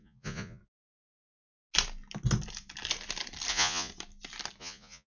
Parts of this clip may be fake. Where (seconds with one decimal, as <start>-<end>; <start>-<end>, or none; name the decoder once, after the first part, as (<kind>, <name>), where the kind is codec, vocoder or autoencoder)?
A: 0.0-0.6 (vocoder, Vocos); 3.5-3.9; 4.6-5.1